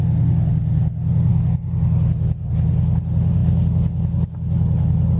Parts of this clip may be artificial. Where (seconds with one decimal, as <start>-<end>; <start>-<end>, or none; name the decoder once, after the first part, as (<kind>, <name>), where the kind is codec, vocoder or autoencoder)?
none